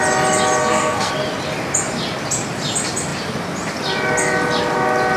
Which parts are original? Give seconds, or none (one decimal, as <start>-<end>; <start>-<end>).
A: 0.0-0.6; 1.1-5.2